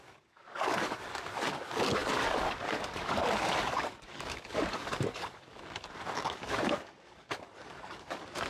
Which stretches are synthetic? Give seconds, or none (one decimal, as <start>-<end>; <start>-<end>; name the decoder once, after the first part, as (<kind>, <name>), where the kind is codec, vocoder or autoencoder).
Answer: 0.0-8.5 (codec, DAC)